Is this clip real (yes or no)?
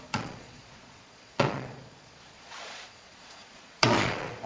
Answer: no